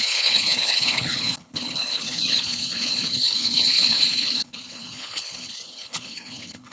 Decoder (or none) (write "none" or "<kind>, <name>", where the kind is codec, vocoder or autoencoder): codec, HILCodec